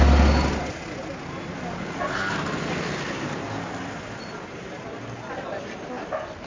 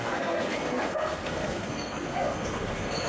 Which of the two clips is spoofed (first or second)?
second